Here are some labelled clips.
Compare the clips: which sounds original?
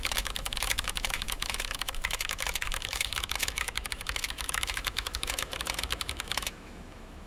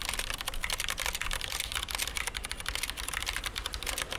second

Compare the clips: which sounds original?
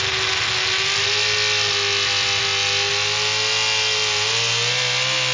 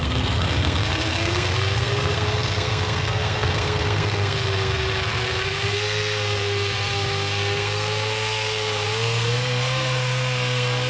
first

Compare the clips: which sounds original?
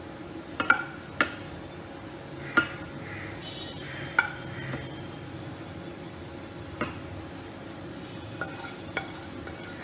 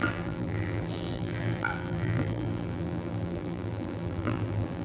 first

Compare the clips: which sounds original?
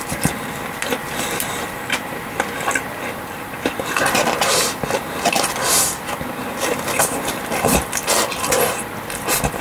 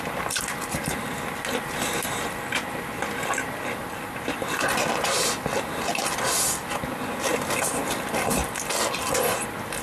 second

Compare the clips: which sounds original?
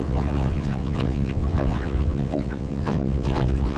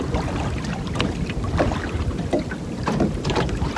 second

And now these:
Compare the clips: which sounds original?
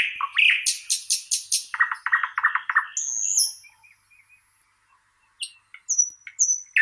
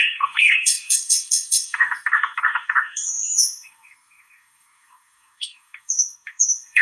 first